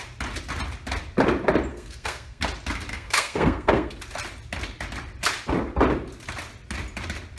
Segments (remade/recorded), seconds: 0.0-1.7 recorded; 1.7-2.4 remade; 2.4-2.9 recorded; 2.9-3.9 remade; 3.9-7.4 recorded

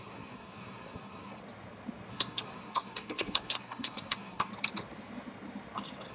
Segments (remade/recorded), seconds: 0.0-1.4 remade; 1.4-2.1 recorded; 2.1-4.5 remade; 4.5-6.1 recorded

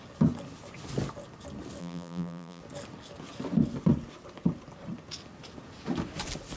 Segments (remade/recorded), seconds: 0.0-1.8 recorded; 1.8-2.6 remade; 2.6-6.6 recorded

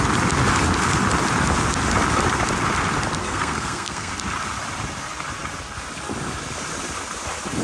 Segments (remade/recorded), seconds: 0.0-3.2 recorded; 3.2-4.1 remade; 4.1-7.6 recorded